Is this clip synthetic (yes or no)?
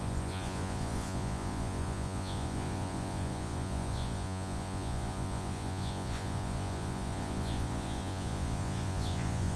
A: yes